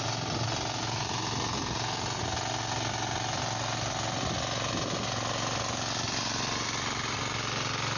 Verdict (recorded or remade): recorded